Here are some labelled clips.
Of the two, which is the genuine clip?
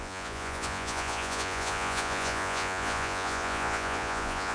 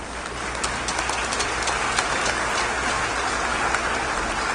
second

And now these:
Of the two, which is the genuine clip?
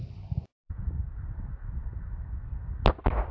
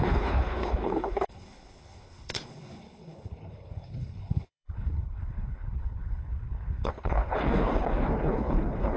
first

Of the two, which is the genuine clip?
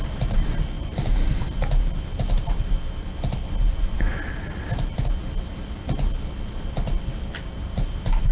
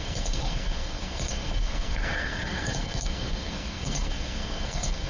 first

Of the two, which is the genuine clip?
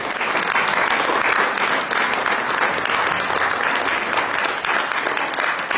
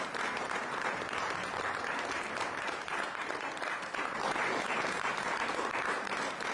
first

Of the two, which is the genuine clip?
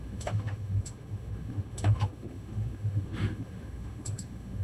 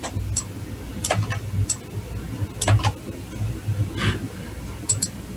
second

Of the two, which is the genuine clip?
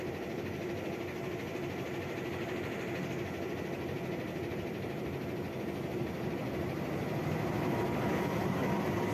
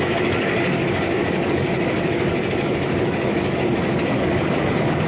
first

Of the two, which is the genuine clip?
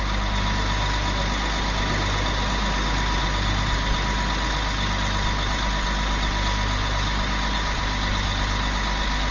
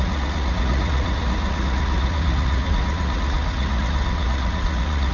first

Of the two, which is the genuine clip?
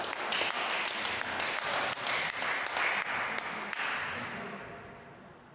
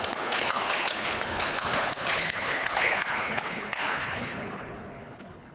first